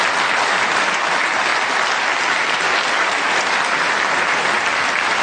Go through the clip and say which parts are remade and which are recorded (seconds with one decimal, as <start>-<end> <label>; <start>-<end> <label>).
0.0-5.2 recorded